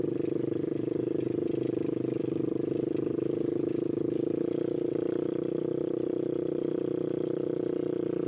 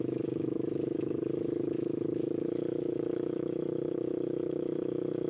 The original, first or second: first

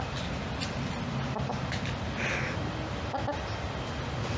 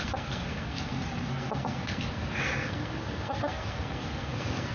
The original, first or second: first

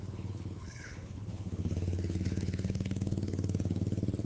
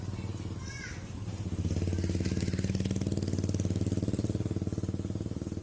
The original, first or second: second